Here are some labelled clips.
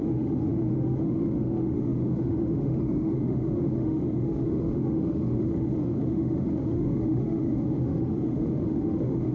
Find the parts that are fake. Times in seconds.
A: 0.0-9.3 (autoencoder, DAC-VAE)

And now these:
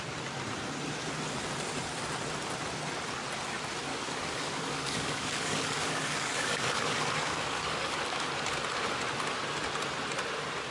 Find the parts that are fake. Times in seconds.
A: 3.9-8.3 (codec, DAC)

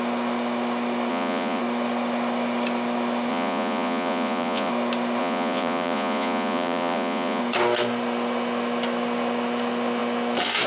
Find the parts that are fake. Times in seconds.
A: 1.1-1.6 (vocoder, Vocos); 3.3-4.7; 5.2-7.4

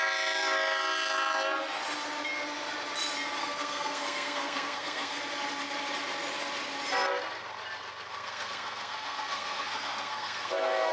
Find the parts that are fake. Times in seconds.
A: 3.4-5.2 (codec, SNAC); 8.1-10.9

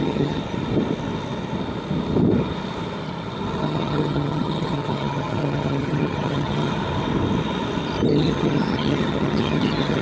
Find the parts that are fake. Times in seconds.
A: 0.0-0.4 (vocoder, HiFi-GAN); 3.6-6.7; 8.1-10.0